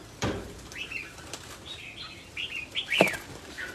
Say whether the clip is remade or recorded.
remade